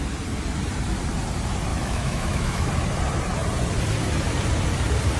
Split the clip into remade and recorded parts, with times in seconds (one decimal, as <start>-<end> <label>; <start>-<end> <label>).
0.0-1.7 recorded; 1.7-2.7 remade; 2.7-5.2 recorded